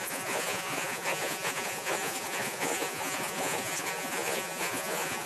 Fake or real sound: fake